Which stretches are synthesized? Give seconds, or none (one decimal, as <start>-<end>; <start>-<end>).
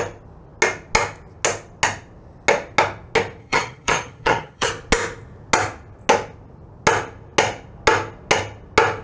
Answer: 3.4-4.7